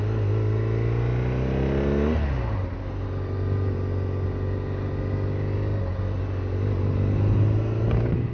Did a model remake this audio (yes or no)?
no